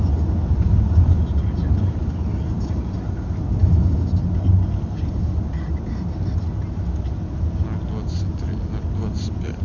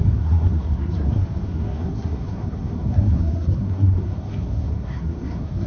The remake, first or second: second